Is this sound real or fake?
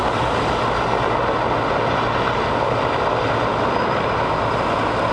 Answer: real